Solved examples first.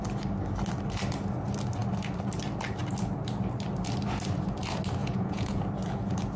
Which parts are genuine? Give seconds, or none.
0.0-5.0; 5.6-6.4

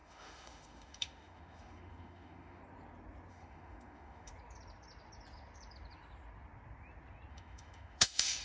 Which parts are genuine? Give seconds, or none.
2.6-3.3; 4.3-7.3